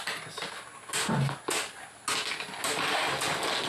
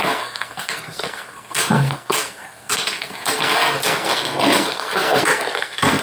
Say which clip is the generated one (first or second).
second